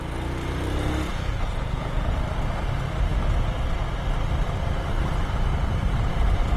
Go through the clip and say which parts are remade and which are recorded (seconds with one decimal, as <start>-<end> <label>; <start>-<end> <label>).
0.0-1.1 recorded; 1.1-2.2 remade; 2.2-6.6 recorded